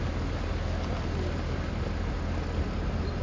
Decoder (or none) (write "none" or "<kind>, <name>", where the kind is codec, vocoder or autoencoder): none